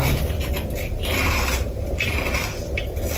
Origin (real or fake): real